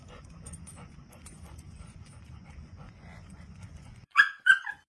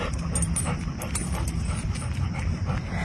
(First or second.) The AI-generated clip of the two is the first